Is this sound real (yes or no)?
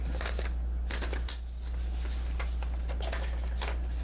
yes